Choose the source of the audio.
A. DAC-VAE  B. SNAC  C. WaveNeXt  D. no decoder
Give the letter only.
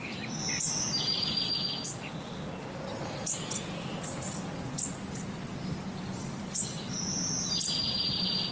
D